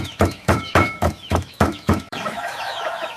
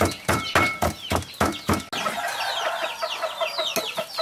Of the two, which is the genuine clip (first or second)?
second